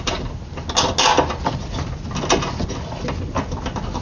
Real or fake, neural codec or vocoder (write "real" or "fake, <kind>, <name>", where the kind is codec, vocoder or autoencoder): real